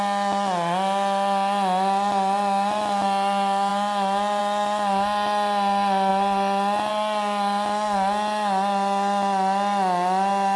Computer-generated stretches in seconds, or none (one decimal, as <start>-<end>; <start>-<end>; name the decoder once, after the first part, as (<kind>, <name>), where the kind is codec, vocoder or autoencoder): none